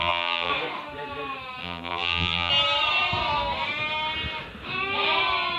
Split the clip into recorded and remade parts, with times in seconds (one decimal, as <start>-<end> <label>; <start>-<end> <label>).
0.0-0.5 remade; 0.5-1.6 recorded; 1.6-2.5 remade; 2.5-5.6 recorded